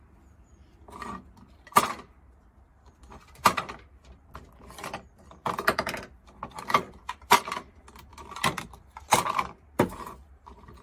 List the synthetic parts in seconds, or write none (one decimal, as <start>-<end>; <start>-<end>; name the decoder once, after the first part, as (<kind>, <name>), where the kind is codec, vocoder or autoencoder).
0.0-10.8 (vocoder, BigVGAN v2)